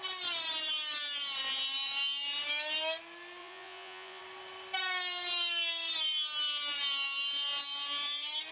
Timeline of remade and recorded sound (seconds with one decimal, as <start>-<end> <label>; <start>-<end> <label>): 0.0-3.4 recorded; 3.4-4.2 remade; 4.2-8.5 recorded